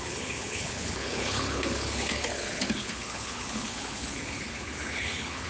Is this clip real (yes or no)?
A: no